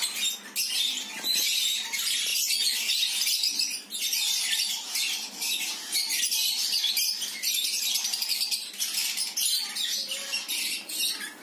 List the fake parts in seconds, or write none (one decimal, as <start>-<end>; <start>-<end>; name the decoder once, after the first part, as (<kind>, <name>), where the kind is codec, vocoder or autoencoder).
none